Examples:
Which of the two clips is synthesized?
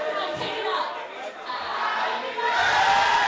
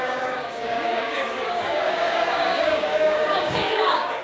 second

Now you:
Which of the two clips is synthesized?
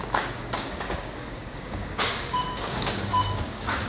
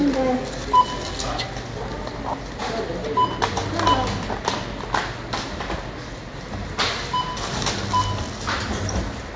first